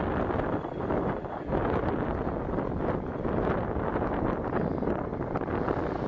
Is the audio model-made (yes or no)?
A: no